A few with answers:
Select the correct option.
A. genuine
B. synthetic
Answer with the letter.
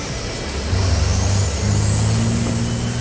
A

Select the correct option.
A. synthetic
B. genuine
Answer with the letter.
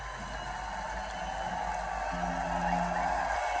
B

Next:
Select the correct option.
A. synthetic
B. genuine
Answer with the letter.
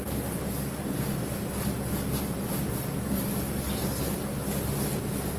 B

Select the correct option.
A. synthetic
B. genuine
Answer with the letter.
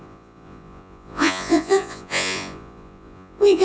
A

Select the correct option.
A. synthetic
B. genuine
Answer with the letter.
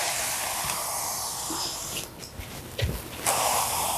B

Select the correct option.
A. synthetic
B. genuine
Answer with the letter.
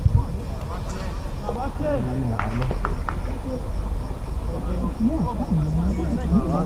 B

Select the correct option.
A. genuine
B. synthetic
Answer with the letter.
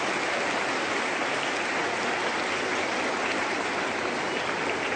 A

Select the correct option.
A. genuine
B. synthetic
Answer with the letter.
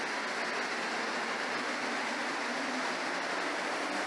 A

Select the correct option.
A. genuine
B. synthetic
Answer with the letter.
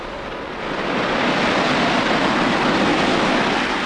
A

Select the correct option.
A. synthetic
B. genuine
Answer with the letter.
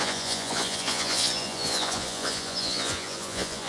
A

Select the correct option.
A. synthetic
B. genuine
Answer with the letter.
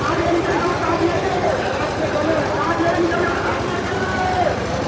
A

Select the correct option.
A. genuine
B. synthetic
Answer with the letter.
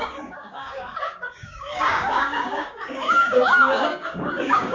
B